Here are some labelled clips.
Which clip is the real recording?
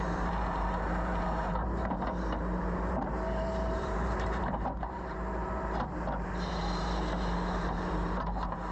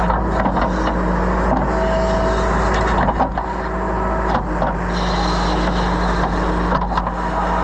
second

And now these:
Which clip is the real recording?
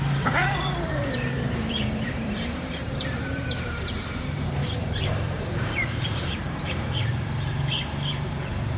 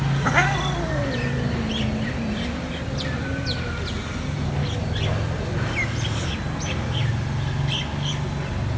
second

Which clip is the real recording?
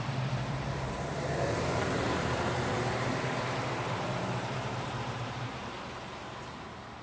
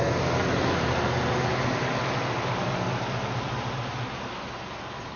second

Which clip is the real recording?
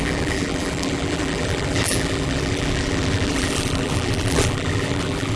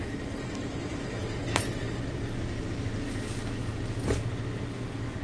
second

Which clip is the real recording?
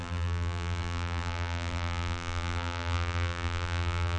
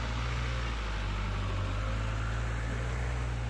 second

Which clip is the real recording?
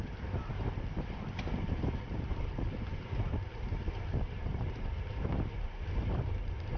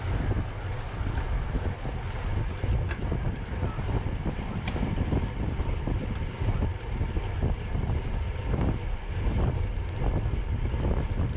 second